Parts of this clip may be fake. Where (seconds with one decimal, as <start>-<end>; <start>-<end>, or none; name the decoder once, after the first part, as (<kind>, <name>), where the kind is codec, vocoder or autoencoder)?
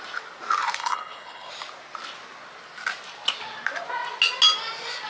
0.8-1.5 (codec, HILCodec)